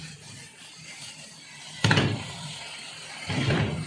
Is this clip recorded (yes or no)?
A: no